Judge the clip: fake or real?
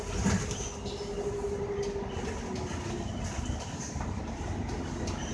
real